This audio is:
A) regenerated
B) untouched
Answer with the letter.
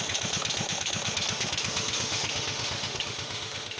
A